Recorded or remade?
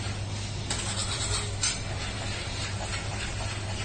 recorded